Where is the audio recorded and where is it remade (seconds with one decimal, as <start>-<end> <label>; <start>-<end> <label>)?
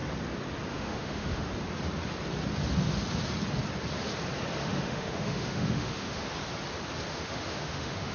0.0-0.7 recorded; 0.7-1.5 remade; 1.5-4.6 recorded; 4.6-6.3 remade; 6.3-7.1 recorded; 7.1-8.1 remade